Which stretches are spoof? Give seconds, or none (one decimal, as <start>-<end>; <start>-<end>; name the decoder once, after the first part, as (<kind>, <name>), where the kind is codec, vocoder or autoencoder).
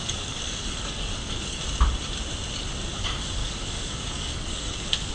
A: 0.0-1.6 (codec, DAC); 3.4-5.1